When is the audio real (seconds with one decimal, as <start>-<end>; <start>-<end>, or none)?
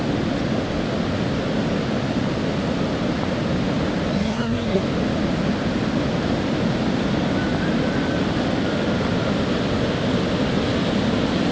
0.0-4.1; 4.8-11.5